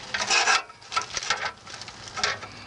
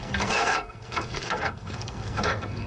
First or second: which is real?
first